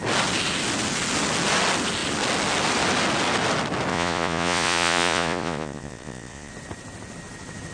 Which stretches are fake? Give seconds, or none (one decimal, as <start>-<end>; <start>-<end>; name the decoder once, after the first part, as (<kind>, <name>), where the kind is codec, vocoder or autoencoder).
3.9-6.5 (vocoder, Vocos)